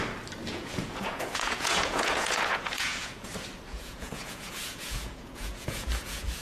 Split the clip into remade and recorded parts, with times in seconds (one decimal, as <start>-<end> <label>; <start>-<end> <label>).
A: 0.0-0.5 recorded; 0.5-3.3 remade; 3.3-3.7 recorded; 3.7-6.4 remade